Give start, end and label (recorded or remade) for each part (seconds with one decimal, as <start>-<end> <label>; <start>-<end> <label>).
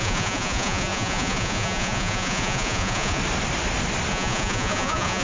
0.0-3.2 remade; 3.2-4.1 recorded; 4.1-5.2 remade